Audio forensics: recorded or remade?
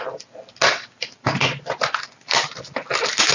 recorded